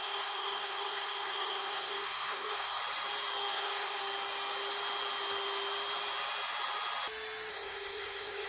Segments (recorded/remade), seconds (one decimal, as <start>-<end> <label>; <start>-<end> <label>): 0.0-2.8 remade; 2.8-3.5 recorded; 3.5-4.0 remade; 4.0-7.5 recorded; 7.5-8.5 remade